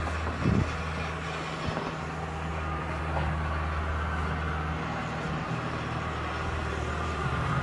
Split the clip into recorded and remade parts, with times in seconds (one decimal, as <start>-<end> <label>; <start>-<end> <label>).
0.0-2.5 recorded; 2.5-3.0 remade; 3.0-5.0 recorded; 5.0-7.6 remade